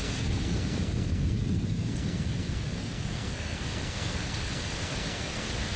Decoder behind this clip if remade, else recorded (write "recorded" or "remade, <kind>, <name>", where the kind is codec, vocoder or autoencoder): remade, codec, SNAC